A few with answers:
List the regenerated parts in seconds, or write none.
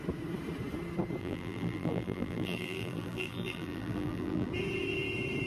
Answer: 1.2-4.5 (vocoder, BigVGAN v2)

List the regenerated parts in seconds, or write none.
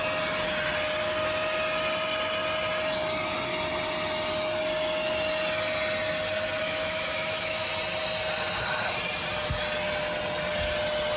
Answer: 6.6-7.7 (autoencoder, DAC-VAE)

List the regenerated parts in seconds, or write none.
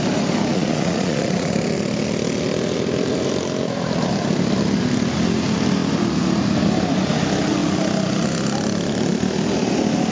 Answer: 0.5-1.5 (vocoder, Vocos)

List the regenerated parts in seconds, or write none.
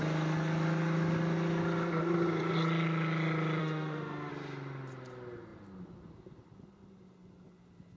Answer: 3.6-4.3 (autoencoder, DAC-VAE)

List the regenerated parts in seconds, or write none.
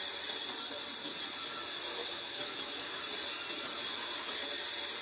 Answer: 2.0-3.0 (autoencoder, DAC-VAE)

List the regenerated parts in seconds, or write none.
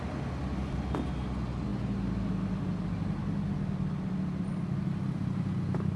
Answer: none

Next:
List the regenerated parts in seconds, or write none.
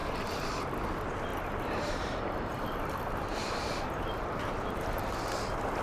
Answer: 0.0-0.5 (vocoder, BigVGAN v2); 1.3-4.8